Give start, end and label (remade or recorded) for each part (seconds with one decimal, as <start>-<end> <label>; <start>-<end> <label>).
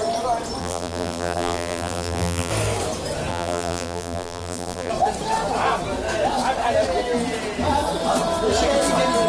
0.0-0.6 recorded; 0.6-2.5 remade; 2.5-3.3 recorded; 3.3-4.9 remade; 4.9-9.3 recorded